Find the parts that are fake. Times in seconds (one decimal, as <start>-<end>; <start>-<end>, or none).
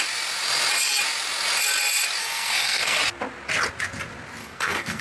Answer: 2.2-3.0; 4.4-5.0